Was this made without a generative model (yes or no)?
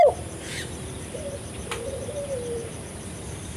no